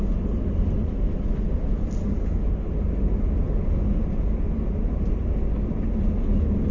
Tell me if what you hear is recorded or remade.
recorded